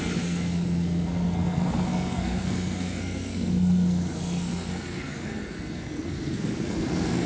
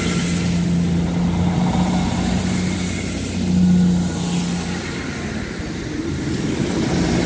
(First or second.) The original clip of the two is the second